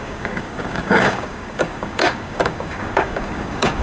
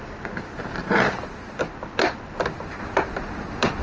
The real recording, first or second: second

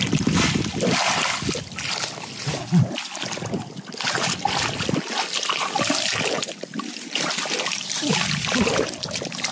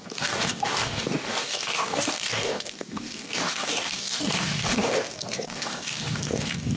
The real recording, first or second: first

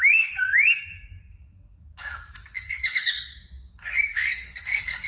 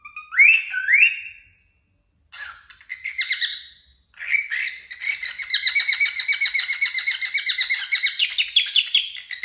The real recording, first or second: second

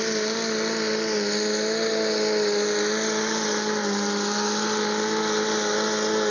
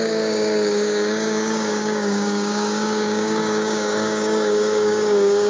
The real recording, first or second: first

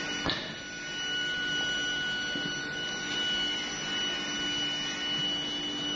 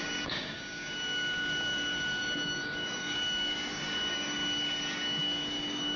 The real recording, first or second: first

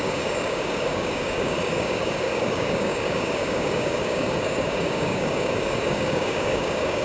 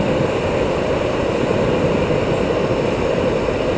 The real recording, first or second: second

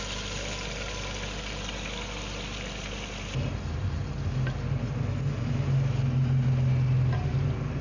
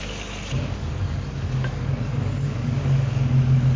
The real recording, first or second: first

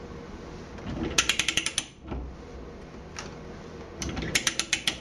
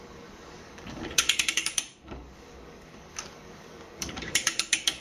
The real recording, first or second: first